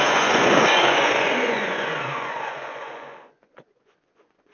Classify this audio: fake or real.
fake